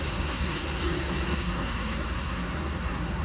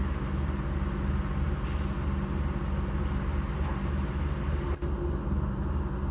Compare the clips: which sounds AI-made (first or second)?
first